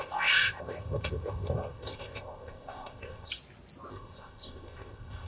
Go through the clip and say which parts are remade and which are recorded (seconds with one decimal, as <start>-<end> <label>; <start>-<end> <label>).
0.0-3.3 remade; 3.3-3.9 recorded; 3.9-5.3 remade